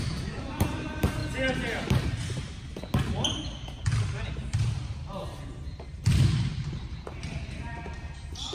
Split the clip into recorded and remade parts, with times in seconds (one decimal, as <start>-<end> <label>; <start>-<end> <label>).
0.0-1.2 remade; 1.2-4.3 recorded; 4.3-8.5 remade